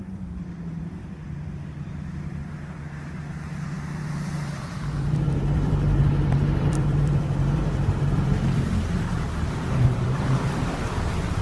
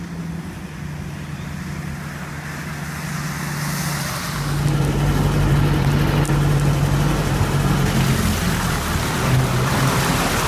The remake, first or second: first